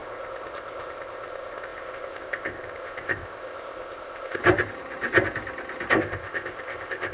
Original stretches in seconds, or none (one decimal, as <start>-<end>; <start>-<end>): 4.4-5.9

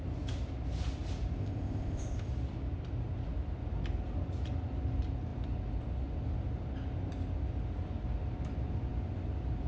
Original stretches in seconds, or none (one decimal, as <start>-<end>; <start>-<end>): 0.0-1.4; 2.3-9.7

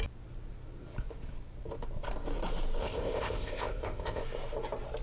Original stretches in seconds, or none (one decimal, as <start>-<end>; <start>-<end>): 0.0-2.8; 4.2-5.0

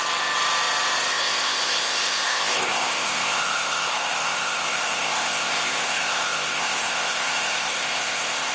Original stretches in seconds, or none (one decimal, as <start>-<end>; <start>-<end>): 0.0-1.1